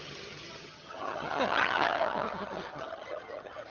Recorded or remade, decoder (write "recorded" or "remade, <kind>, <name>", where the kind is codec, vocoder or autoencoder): remade, vocoder, HiFi-GAN